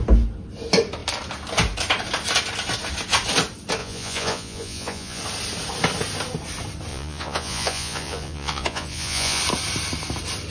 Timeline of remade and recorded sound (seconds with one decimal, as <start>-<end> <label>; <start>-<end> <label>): 0.0-3.8 recorded; 3.8-5.2 remade; 5.2-6.9 recorded; 6.9-9.4 remade; 9.4-10.5 recorded